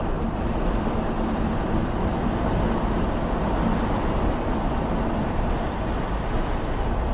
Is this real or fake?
real